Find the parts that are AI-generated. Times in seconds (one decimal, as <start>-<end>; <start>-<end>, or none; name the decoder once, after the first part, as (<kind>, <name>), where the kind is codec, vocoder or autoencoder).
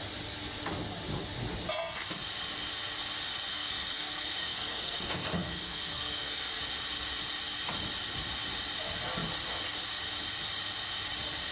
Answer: 3.5-6.6 (codec, SNAC)